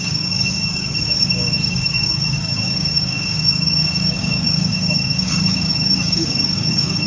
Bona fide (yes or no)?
no